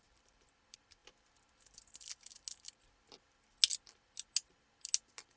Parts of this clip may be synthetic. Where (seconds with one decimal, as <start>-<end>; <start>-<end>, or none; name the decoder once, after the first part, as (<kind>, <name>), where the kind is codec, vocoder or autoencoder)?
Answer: none